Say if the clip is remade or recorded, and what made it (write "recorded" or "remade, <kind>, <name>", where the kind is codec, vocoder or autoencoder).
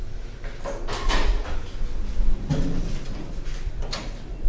recorded